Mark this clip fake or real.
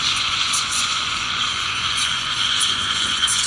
fake